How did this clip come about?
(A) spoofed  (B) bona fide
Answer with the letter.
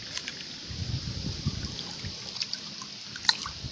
B